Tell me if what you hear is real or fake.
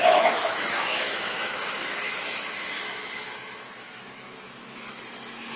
fake